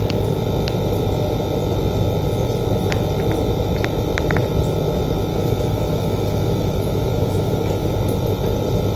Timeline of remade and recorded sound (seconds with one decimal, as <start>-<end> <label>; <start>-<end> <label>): 0.0-5.3 recorded; 5.3-7.9 remade; 7.9-9.0 recorded